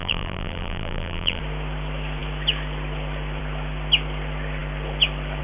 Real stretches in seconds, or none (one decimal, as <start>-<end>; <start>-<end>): 1.4-5.4